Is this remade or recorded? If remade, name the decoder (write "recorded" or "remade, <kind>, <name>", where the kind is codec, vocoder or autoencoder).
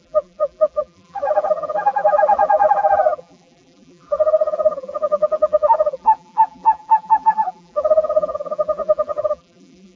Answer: remade, vocoder, BigVGAN v2